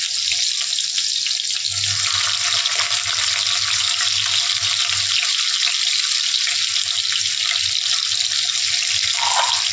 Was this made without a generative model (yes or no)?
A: yes